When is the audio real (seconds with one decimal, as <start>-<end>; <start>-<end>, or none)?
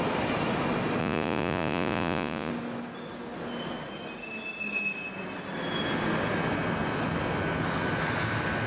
0.0-1.0; 2.5-8.7